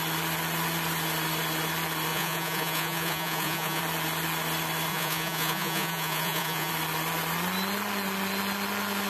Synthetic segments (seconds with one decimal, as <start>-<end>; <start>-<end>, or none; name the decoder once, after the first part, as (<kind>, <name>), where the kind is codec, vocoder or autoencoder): 2.1-3.8 (vocoder, Vocos); 4.9-6.7